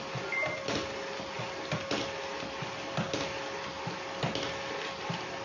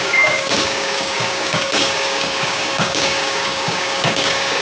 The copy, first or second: second